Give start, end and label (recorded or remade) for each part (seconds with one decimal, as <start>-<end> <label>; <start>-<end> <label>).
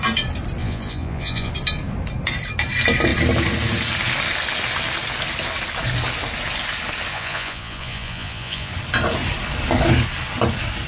0.0-0.6 recorded; 0.6-1.5 remade; 1.5-7.1 recorded; 7.1-8.7 remade; 8.7-10.9 recorded